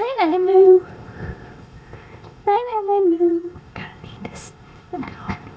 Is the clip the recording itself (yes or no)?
no